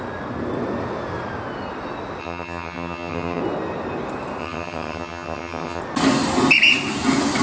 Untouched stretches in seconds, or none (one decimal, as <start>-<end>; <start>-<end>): 0.0-2.2; 3.4-4.4; 5.8-7.4